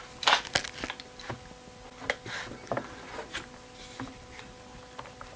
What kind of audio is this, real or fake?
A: real